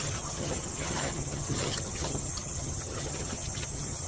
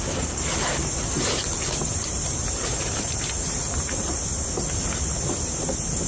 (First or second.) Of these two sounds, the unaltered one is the second